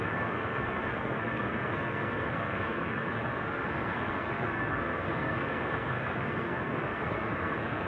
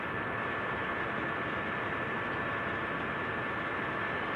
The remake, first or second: first